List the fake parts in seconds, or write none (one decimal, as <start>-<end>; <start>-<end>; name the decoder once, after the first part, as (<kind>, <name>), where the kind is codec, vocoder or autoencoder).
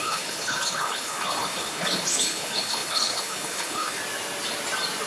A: 0.0-4.0 (codec, HILCodec)